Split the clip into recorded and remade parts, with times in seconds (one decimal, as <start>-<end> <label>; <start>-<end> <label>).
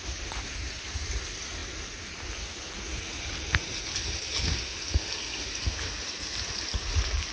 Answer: 0.0-7.3 recorded